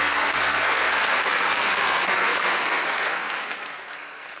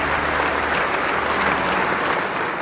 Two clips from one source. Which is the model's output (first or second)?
first